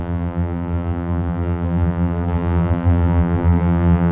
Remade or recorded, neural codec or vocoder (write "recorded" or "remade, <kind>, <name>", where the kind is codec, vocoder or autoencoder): remade, vocoder, BigVGAN v2